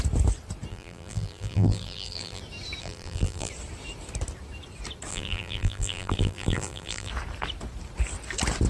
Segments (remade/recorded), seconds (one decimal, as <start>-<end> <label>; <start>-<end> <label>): 0.0-0.7 recorded; 0.7-2.4 remade; 2.4-2.8 recorded; 2.8-3.5 remade; 3.5-5.1 recorded; 5.1-7.1 remade; 7.1-8.7 recorded